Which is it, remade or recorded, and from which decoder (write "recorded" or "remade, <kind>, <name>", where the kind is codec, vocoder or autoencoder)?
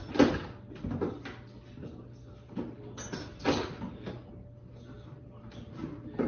recorded